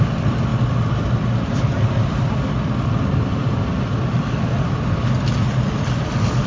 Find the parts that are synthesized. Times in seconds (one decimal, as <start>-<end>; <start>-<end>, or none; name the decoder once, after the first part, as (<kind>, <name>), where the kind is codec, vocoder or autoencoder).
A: none